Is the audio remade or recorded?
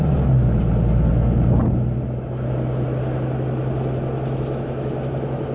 recorded